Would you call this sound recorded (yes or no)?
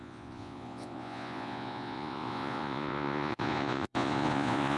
no